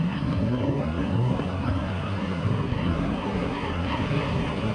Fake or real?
fake